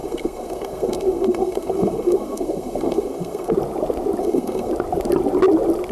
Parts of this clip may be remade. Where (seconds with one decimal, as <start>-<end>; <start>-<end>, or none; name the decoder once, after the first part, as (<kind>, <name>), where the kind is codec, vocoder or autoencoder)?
0.0-3.5 (codec, SNAC); 4.2-4.7